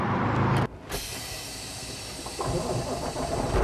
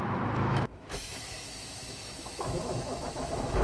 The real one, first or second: first